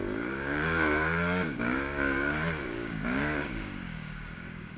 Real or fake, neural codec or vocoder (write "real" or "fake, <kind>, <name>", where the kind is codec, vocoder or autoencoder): fake, codec, DAC